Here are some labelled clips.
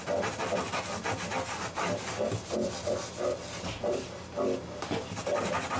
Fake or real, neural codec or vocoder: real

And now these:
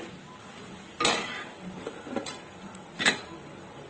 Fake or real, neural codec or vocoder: real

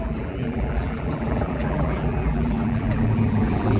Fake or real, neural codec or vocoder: fake, vocoder, BigVGAN v2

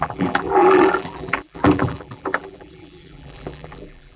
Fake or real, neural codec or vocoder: fake, vocoder, BigVGAN v2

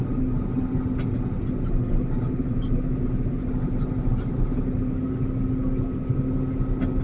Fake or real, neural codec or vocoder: real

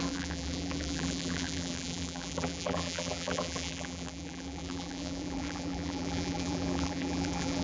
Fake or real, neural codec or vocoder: fake, vocoder, BigVGAN v2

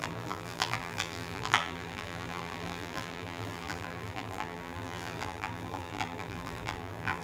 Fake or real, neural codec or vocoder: fake, vocoder, BigVGAN v2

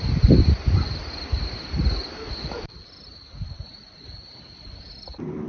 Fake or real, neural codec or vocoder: real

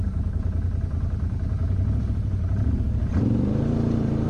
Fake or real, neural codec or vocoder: fake, vocoder, BigVGAN v2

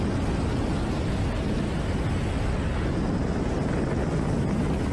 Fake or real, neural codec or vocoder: real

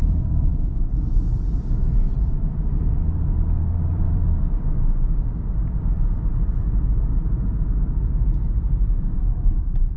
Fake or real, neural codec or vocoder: fake, vocoder, BigVGAN v2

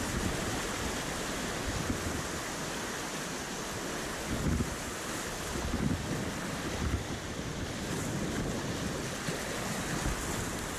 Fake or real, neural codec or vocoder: real